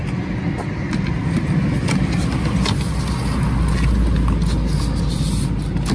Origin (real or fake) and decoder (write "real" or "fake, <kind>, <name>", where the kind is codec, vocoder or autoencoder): real